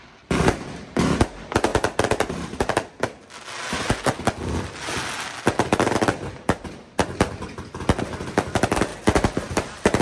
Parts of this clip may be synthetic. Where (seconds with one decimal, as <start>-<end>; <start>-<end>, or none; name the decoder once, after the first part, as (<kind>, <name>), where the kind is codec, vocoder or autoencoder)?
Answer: 8.9-10.0 (vocoder, BigVGAN v2)

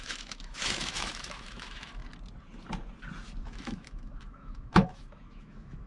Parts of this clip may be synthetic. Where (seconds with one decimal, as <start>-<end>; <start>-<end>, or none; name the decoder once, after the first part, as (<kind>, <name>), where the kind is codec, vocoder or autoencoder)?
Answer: 0.0-2.0 (autoencoder, DAC-VAE); 3.4-5.9

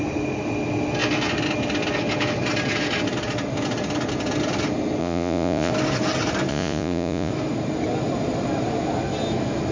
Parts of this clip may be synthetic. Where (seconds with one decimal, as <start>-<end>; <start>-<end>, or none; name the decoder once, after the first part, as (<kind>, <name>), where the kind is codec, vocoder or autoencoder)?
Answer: 5.0-5.7 (vocoder, Vocos); 6.5-7.3

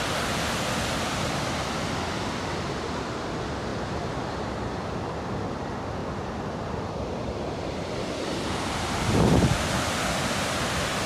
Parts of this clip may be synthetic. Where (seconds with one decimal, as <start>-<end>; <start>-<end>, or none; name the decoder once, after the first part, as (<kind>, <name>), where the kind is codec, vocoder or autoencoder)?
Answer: 3.7-5.0 (vocoder, BigVGAN v2); 6.0-11.1

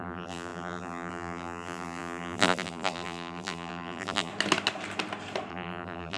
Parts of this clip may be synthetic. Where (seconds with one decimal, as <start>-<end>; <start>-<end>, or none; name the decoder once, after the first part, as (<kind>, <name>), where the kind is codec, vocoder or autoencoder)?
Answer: 0.0-4.3 (vocoder, BigVGAN v2); 5.5-6.2

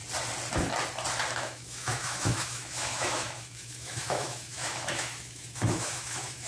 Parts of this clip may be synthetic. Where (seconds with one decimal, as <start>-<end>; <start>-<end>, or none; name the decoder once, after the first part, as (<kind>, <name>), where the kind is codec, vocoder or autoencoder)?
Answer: 1.4-6.5 (autoencoder, DAC-VAE)